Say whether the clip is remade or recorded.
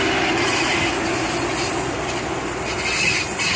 recorded